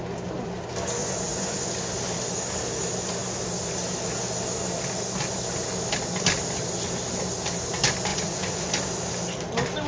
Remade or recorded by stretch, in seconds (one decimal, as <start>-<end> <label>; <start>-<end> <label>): 0.0-1.0 recorded; 1.0-1.7 remade; 1.7-8.1 recorded; 8.1-8.7 remade; 8.7-9.9 recorded